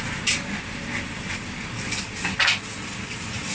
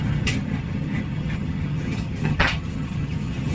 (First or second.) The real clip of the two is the first